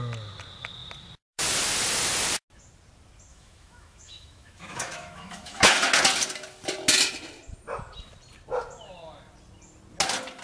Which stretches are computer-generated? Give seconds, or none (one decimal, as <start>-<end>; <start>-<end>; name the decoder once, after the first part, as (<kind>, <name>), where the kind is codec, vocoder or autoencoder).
3.3-5.8 (autoencoder, DAC-VAE)